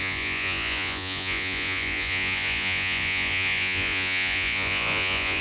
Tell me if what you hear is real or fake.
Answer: fake